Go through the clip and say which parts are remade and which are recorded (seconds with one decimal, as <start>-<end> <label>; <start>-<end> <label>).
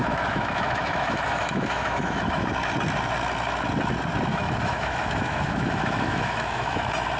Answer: 0.0-2.5 remade; 2.5-4.3 recorded; 4.3-6.8 remade; 6.8-7.2 recorded